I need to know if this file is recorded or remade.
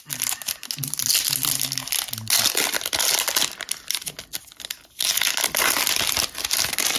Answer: recorded